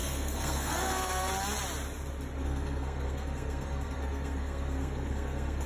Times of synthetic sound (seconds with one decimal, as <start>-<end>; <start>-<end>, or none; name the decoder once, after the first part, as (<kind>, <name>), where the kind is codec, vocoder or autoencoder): 0.0-1.3 (codec, SNAC); 2.4-5.7